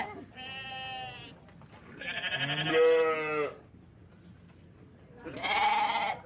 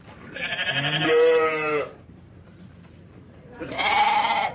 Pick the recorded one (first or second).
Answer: first